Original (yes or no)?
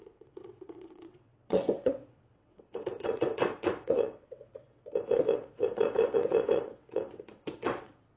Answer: no